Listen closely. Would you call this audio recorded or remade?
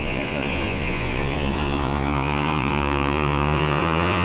remade